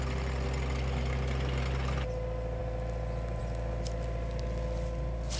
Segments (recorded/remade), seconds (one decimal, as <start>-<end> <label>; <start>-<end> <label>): 0.0-5.4 recorded